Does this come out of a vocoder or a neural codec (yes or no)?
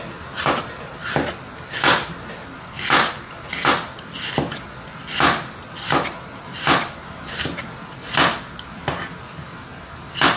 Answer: no